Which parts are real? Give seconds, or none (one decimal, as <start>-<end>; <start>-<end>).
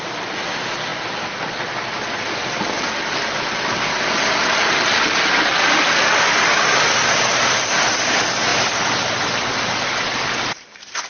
0.0-11.1